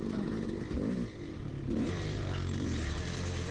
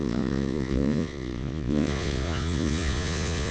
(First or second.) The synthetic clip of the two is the second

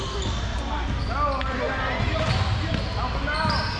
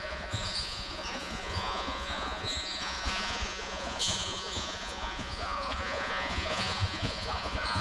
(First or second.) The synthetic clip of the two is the second